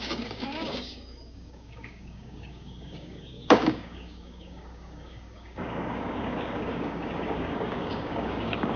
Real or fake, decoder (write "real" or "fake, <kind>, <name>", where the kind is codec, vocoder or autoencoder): fake, codec, DAC